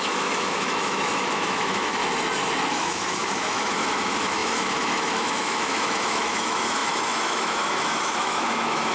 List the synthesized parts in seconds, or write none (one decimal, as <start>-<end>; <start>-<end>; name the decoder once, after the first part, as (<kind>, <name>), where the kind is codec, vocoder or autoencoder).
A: 0.0-2.0 (autoencoder, DAC-VAE); 2.7-8.9